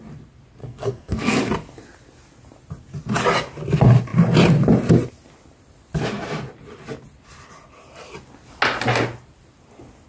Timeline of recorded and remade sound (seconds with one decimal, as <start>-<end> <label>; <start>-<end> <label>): 0.0-0.6 recorded; 0.6-1.4 remade; 1.4-10.1 recorded